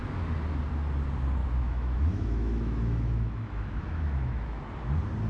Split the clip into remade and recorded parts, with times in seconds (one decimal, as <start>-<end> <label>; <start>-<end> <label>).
0.0-1.4 recorded; 1.4-4.6 remade; 4.6-5.3 recorded